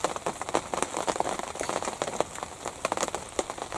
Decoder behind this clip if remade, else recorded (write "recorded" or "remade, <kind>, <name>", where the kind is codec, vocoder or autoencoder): recorded